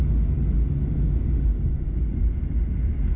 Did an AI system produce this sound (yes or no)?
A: no